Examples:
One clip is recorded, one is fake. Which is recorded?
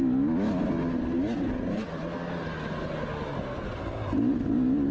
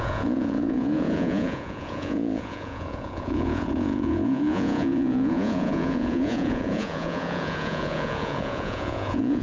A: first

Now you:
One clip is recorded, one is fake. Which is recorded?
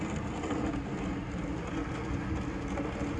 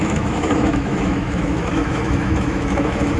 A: first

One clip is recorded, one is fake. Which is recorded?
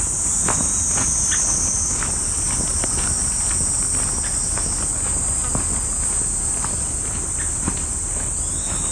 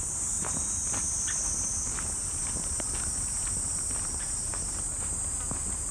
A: first